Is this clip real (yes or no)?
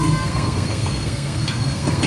no